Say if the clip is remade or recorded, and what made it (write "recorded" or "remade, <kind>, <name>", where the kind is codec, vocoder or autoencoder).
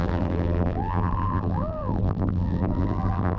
remade, vocoder, BigVGAN v2